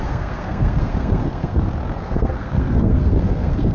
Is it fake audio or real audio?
fake